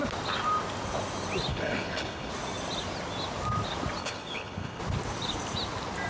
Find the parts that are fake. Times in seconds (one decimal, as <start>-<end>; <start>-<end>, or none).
1.5-2.3; 4.0-4.8